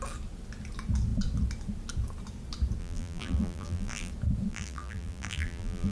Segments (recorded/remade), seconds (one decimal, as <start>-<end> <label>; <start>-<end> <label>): 0.0-2.8 recorded; 2.8-4.1 remade; 4.1-4.5 recorded; 4.5-5.9 remade